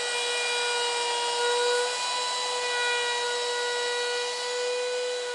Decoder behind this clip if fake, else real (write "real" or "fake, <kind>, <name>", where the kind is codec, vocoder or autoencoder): real